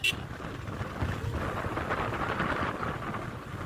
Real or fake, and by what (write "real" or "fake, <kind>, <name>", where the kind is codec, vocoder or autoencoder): real